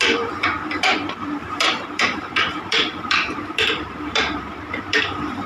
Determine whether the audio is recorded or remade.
remade